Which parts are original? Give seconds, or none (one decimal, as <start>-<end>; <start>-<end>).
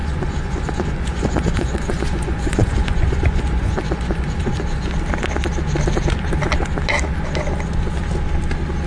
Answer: 4.9-8.9